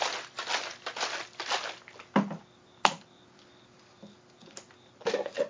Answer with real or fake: real